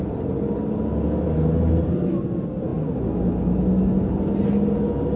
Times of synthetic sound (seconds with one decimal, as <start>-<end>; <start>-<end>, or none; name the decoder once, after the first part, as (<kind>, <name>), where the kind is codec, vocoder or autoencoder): none